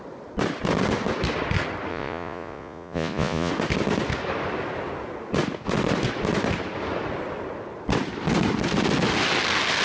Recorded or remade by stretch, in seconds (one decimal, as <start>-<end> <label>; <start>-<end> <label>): 0.0-1.9 recorded; 1.9-3.5 remade; 3.5-9.8 recorded

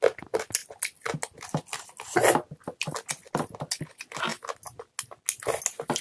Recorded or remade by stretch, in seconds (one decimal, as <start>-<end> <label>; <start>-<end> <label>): 0.0-6.0 recorded